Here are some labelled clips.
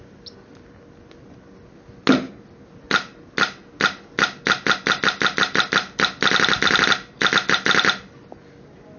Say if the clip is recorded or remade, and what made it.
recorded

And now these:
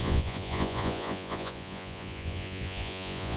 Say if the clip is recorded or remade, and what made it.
remade, vocoder, Vocos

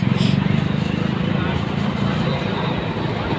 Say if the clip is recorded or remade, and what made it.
recorded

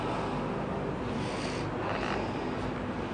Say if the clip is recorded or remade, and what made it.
recorded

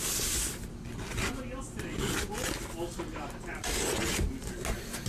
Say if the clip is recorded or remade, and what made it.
recorded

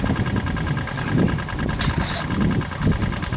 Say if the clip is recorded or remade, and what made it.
recorded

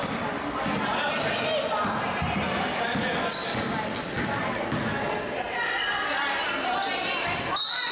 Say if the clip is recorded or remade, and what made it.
recorded